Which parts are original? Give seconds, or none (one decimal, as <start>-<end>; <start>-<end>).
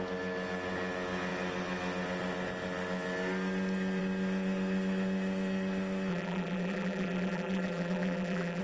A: 0.0-6.1